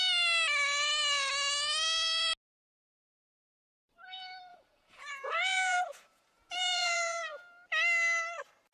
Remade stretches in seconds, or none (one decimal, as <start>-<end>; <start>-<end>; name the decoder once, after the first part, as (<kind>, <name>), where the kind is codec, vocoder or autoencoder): 4.5-7.4 (vocoder, Vocos)